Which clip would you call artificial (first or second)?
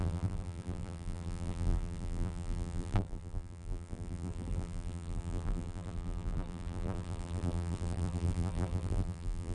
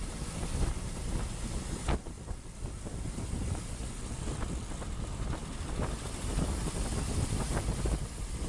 first